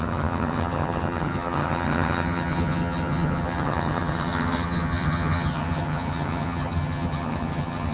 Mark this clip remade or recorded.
remade